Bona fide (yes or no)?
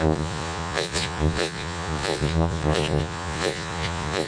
no